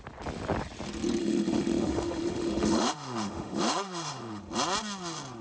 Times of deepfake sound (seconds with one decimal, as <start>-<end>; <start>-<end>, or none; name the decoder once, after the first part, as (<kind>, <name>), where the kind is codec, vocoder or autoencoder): 1.2-4.4 (autoencoder, DAC-VAE)